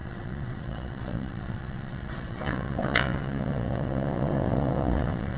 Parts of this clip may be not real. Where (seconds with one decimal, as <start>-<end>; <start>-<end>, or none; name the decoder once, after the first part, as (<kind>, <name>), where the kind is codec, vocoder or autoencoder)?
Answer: 0.0-5.4 (vocoder, WaveNeXt)